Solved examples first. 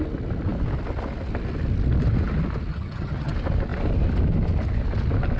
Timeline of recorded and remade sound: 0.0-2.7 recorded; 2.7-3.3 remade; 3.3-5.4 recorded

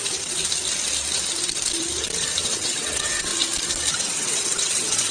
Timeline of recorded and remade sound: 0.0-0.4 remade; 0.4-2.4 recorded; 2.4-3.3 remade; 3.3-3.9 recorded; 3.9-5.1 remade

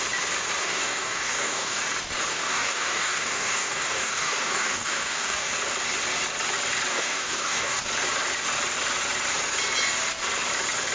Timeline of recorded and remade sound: 0.0-0.6 recorded; 0.6-1.8 remade; 1.8-2.3 recorded; 2.3-5.5 remade; 5.5-6.9 recorded; 6.9-7.8 remade; 7.8-10.9 recorded